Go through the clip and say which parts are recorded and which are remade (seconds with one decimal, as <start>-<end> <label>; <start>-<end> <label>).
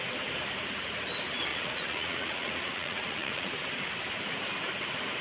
0.0-1.5 recorded; 1.5-3.5 remade; 3.5-5.2 recorded